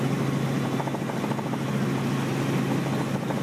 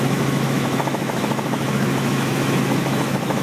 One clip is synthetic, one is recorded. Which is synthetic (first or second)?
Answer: second